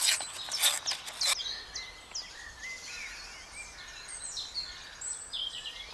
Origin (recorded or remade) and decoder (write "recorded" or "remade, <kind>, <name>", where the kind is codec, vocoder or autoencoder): recorded